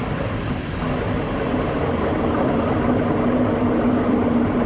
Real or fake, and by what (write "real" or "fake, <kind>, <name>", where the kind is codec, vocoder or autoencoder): real